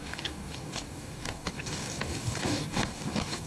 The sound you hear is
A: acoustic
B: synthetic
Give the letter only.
B